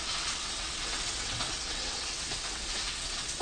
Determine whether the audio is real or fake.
fake